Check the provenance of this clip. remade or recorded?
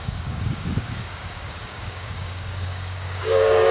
remade